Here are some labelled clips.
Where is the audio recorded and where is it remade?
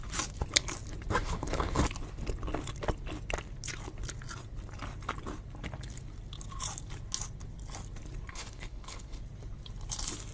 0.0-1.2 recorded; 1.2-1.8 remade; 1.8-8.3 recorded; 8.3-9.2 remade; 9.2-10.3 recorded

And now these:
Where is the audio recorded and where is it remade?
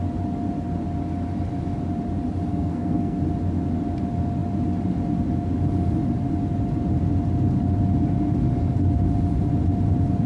0.0-2.5 recorded; 2.5-3.2 remade; 3.2-10.3 recorded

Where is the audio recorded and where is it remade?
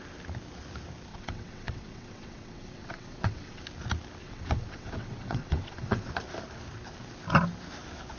0.0-1.1 recorded; 1.1-3.6 remade; 3.6-4.2 recorded; 4.2-6.1 remade; 6.1-8.2 recorded